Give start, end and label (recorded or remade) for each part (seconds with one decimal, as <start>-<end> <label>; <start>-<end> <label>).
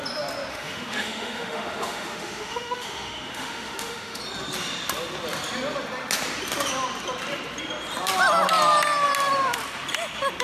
0.0-0.5 recorded; 0.5-4.2 remade; 4.2-10.4 recorded